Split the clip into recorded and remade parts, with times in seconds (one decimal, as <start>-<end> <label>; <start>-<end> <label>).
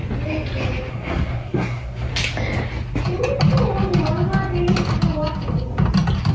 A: 0.0-0.9 recorded; 0.9-2.1 remade; 2.1-6.3 recorded